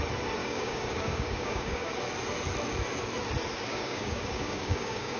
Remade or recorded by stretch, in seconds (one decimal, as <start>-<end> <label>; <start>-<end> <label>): 0.0-0.4 recorded; 0.4-1.9 remade; 1.9-3.7 recorded; 3.7-5.2 remade